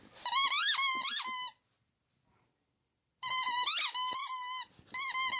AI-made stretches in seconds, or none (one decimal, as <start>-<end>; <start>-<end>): none